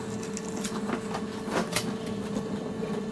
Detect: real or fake real